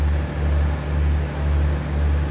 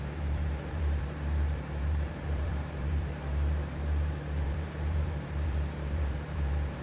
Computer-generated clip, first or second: second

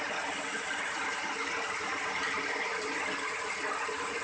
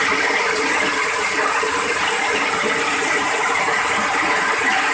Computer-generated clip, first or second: second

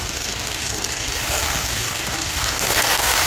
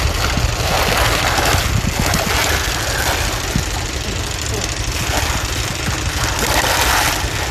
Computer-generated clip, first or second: first